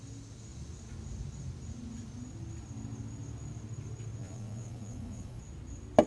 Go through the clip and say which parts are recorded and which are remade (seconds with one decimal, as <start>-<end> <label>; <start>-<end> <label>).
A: 0.0-4.2 recorded; 4.2-5.4 remade; 5.4-6.1 recorded